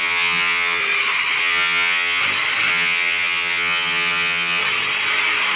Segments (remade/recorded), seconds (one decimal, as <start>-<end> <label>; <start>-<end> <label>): 0.0-0.8 remade; 0.8-1.4 recorded; 1.4-2.2 remade; 2.2-2.7 recorded; 2.7-4.6 remade; 4.6-5.6 recorded